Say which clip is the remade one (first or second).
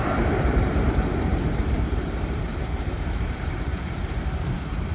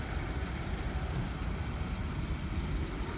first